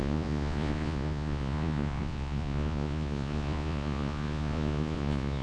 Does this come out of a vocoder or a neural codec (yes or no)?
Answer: yes